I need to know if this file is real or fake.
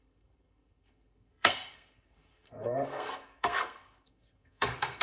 fake